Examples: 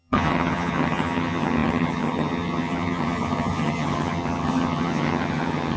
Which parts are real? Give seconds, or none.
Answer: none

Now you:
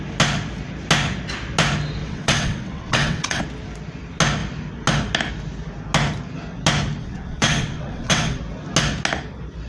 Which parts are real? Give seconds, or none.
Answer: 0.0-2.0; 3.4-7.0; 8.4-9.7

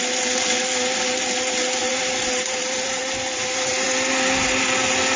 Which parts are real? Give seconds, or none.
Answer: 0.0-1.8; 4.1-5.2

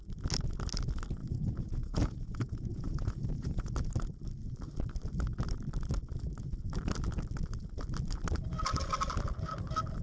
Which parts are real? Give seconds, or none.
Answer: 0.0-1.2; 3.7-10.0

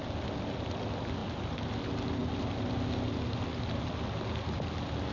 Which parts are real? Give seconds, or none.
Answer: 0.0-5.1

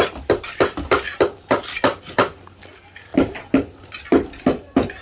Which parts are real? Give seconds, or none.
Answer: 0.0-5.0